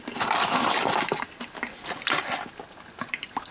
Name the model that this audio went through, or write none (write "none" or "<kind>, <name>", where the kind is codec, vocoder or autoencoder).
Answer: none